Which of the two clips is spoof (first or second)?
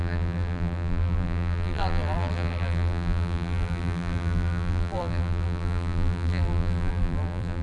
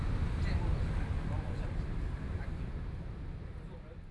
first